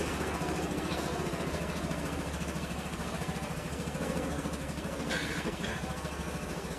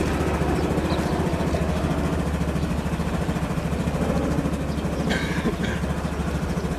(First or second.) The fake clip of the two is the first